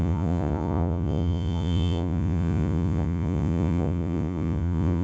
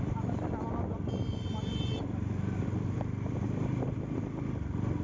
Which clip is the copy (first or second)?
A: first